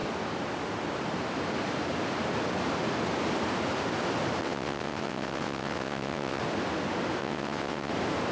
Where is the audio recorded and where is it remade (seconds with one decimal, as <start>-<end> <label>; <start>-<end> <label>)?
0.0-4.4 recorded; 4.4-6.4 remade; 6.4-7.2 recorded; 7.2-7.9 remade; 7.9-8.3 recorded